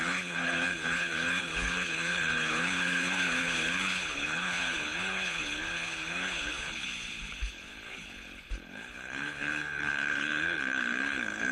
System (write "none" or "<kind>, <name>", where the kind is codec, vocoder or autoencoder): codec, HILCodec